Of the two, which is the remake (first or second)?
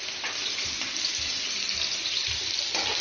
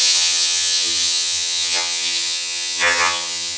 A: second